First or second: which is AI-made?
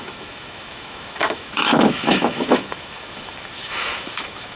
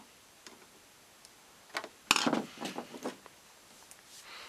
first